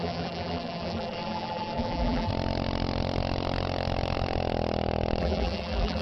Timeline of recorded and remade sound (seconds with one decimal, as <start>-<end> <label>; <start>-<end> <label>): 0.0-2.3 remade; 2.3-5.2 recorded; 5.2-6.0 remade